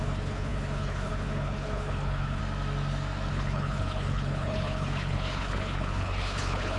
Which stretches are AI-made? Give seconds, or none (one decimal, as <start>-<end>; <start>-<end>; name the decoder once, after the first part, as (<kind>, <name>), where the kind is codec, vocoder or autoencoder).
0.0-2.4 (codec, HILCodec); 3.3-6.8